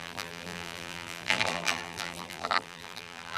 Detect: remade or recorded remade